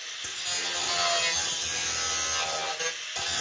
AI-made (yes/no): no